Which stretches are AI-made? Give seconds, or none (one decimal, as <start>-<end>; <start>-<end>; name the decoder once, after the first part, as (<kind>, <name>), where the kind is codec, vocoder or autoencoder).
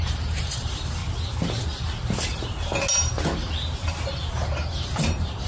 0.0-1.0 (vocoder, BigVGAN v2); 4.0-5.5